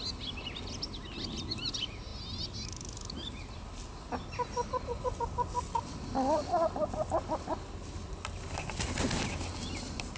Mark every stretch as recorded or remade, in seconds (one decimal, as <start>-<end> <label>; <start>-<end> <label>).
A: 0.0-10.2 recorded

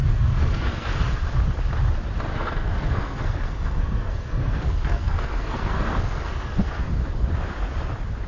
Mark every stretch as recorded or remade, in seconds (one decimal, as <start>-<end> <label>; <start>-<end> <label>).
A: 0.0-1.0 remade; 1.0-2.3 recorded; 2.3-6.9 remade; 6.9-8.3 recorded

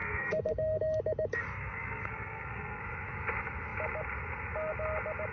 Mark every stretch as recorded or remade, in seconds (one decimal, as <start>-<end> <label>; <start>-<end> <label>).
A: 0.0-0.8 remade; 0.8-1.5 recorded; 1.5-2.8 remade; 2.8-5.3 recorded